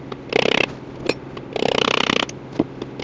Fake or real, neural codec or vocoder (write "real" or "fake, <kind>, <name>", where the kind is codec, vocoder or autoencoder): real